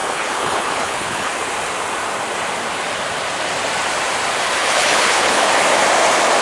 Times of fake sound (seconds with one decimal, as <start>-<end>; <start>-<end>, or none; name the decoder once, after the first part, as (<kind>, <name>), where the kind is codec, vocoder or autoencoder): 0.0-1.3 (codec, HILCodec); 4.6-5.5